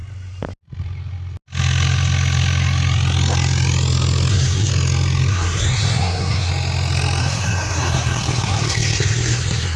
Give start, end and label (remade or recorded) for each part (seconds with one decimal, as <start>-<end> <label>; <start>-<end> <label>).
0.0-4.3 recorded; 4.3-4.7 remade; 4.7-5.3 recorded; 5.3-6.5 remade; 6.5-7.2 recorded; 7.2-9.8 remade